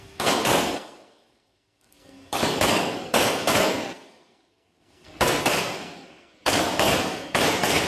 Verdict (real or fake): fake